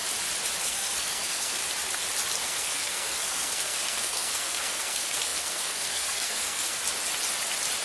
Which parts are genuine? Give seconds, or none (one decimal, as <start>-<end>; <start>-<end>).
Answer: 0.0-0.6; 1.6-2.4; 6.8-7.8